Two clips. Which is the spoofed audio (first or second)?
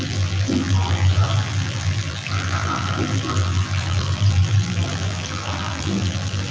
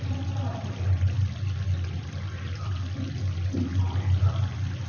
first